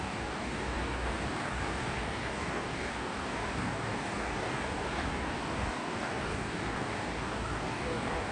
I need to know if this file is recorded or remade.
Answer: remade